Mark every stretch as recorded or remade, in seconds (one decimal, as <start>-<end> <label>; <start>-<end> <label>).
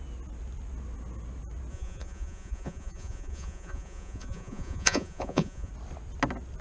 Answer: 0.0-1.7 recorded; 1.7-5.7 remade; 5.7-6.6 recorded